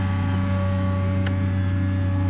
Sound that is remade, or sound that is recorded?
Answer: recorded